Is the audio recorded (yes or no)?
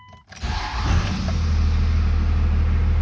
yes